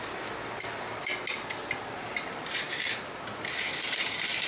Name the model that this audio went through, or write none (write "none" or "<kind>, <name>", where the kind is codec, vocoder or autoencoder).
none